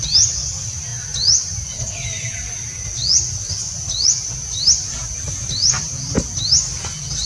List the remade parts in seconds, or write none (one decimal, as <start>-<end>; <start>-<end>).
none